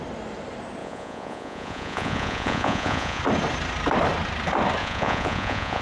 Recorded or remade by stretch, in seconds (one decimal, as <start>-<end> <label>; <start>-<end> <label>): 0.0-0.8 recorded; 0.8-3.2 remade; 3.2-4.8 recorded; 4.8-5.8 remade